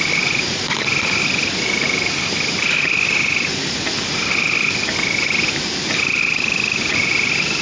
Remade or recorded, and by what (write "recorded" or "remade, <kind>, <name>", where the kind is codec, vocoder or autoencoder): recorded